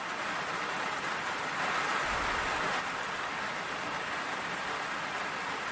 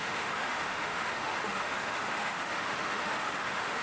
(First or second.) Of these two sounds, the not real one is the second